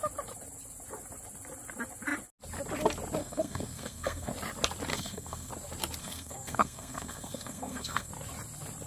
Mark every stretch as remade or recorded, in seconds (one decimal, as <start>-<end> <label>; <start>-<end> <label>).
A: 0.0-3.2 recorded; 3.2-4.3 remade; 4.3-4.9 recorded; 4.9-5.5 remade; 5.5-6.0 recorded; 6.0-8.1 remade; 8.1-8.9 recorded